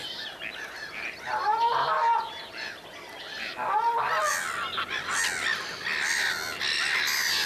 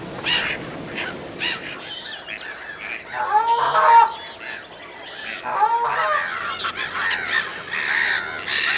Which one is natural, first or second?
second